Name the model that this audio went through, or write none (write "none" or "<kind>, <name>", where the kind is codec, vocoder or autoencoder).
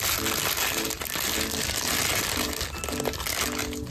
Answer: none